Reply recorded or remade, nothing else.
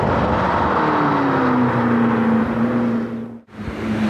recorded